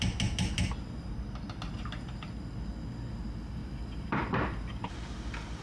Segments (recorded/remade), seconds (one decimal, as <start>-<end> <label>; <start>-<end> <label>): 0.0-3.6 recorded; 3.6-5.6 remade